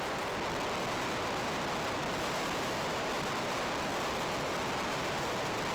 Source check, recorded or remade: recorded